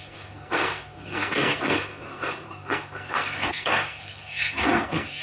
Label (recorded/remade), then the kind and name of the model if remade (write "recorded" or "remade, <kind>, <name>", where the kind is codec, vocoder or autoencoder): remade, codec, SNAC